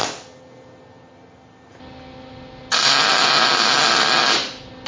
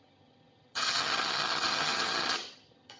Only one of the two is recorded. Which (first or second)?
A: first